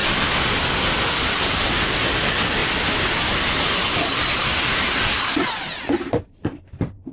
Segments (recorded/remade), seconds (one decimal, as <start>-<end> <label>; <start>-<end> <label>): 0.0-7.1 recorded